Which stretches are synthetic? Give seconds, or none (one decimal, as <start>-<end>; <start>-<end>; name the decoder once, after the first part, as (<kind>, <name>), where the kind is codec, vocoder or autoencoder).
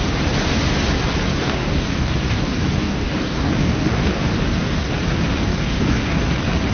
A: 1.3-4.9 (codec, DAC); 5.5-6.2